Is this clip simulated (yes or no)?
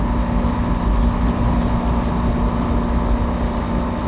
no